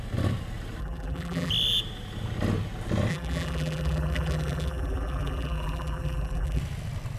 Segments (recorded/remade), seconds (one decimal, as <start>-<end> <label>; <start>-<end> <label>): 0.0-0.8 recorded; 0.8-1.5 remade; 1.5-3.1 recorded; 3.1-6.6 remade; 6.6-7.2 recorded